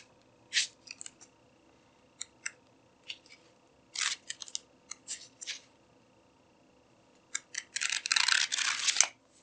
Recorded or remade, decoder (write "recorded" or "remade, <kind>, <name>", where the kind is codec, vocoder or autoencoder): recorded